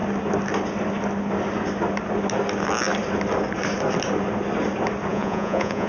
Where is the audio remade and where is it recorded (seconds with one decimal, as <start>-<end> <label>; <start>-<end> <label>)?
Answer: 0.0-5.1 recorded; 5.1-5.9 remade